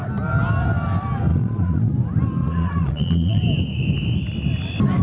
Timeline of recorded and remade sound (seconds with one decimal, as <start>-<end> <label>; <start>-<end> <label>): 0.0-1.3 recorded; 1.3-1.9 remade; 1.9-2.4 recorded; 2.4-3.4 remade; 3.4-5.0 recorded